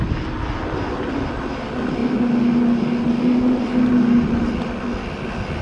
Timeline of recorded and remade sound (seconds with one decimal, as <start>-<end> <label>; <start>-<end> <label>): 0.0-5.6 recorded